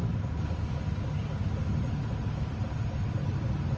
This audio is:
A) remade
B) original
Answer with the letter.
B